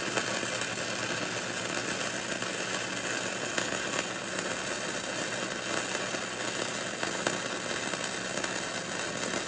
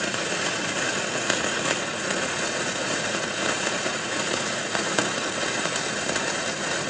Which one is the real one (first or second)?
first